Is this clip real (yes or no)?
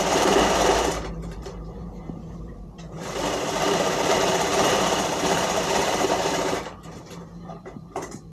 no